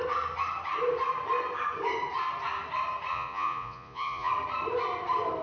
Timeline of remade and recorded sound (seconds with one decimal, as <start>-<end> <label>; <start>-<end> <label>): 0.0-3.1 recorded; 3.1-4.3 remade; 4.3-5.4 recorded